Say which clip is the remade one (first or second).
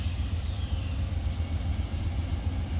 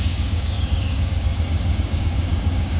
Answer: second